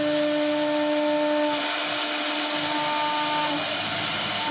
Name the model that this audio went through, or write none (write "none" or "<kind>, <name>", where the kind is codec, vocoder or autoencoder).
none